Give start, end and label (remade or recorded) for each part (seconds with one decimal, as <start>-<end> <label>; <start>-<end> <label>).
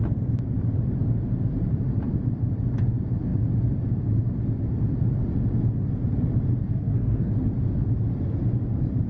0.0-6.6 recorded; 6.6-7.3 remade; 7.3-9.1 recorded